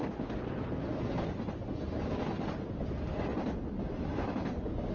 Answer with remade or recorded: recorded